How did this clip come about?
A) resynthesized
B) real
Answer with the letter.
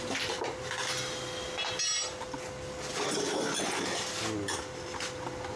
B